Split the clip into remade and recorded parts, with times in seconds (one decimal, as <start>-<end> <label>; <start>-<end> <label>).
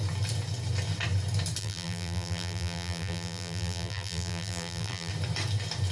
0.0-1.6 recorded; 1.6-5.1 remade; 5.1-5.9 recorded